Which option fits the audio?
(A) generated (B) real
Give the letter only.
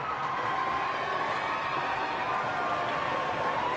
B